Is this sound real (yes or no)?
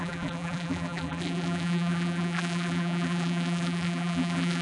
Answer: no